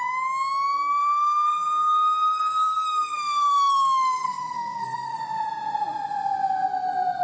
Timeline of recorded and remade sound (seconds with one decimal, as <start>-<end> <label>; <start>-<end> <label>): 0.0-1.0 recorded; 1.0-5.2 remade; 5.2-7.2 recorded

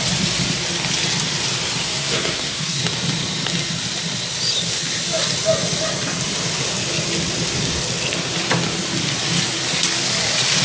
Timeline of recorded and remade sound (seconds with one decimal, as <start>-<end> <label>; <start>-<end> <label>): 0.0-1.8 recorded; 1.8-2.8 remade; 2.8-10.6 recorded

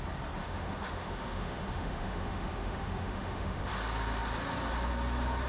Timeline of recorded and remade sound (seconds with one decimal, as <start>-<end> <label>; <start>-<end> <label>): 0.0-0.4 recorded; 0.4-3.7 remade; 3.7-5.5 recorded